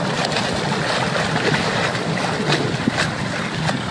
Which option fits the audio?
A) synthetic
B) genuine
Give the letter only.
A